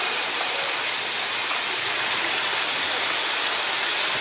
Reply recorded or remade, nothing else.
recorded